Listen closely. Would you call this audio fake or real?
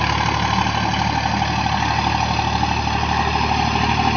real